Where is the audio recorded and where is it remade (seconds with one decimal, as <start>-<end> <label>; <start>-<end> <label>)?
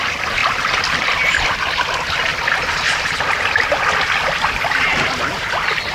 0.0-4.9 recorded; 4.9-5.9 remade